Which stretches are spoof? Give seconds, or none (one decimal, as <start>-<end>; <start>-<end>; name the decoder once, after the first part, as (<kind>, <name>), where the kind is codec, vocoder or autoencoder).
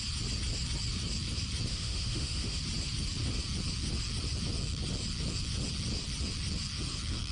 1.7-2.6 (autoencoder, DAC-VAE)